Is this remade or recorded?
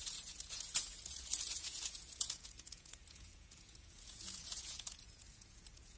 remade